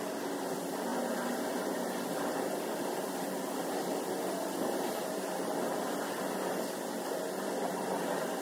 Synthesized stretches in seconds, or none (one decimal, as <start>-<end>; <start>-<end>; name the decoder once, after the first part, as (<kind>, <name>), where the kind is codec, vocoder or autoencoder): 0.0-8.4 (vocoder, BigVGAN v2)